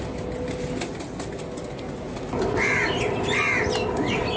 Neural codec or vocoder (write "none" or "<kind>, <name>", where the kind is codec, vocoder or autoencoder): none